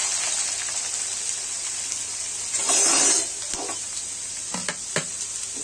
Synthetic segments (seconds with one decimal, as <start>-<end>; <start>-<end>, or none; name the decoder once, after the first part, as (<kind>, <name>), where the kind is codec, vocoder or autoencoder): none